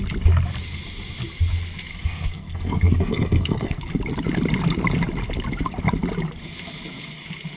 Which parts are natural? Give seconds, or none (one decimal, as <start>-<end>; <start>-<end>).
0.0-1.9; 3.8-7.6